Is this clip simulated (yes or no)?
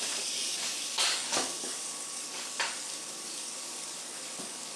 yes